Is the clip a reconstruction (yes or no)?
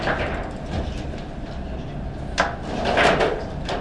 no